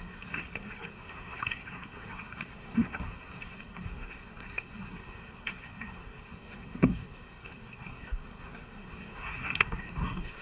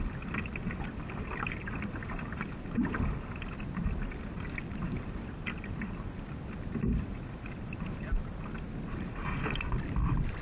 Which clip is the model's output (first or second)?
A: first